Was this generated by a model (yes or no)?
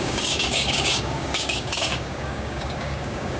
yes